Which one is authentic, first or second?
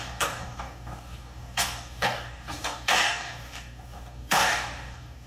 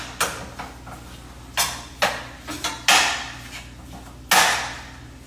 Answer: second